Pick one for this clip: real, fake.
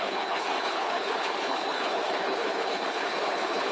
fake